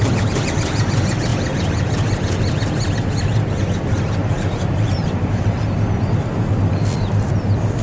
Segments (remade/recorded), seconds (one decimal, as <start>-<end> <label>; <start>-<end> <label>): 0.0-4.2 recorded; 4.2-6.1 remade; 6.1-7.8 recorded